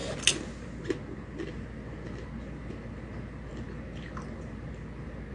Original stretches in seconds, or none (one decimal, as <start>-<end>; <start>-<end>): 0.0-3.5